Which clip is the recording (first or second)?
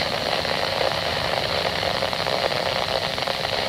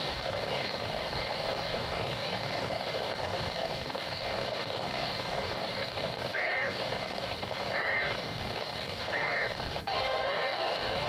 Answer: first